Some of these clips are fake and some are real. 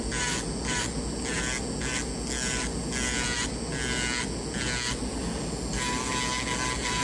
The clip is real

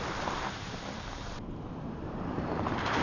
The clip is fake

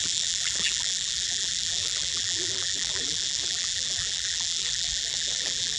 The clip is fake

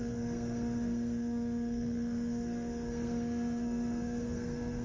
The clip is fake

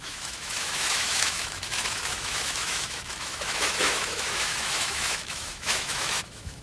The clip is fake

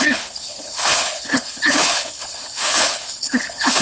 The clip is fake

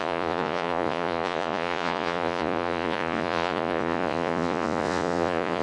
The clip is fake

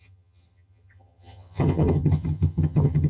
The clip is fake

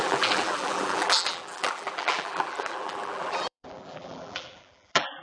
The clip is fake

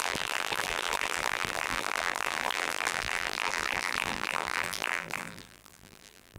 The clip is fake